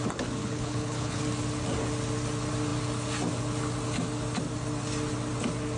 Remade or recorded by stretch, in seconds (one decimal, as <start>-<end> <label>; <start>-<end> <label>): 0.0-0.4 recorded; 0.4-1.2 remade; 1.2-5.8 recorded